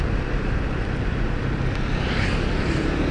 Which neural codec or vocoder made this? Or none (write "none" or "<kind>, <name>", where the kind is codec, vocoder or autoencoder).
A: none